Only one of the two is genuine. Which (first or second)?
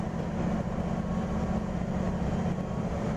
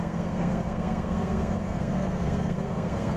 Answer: first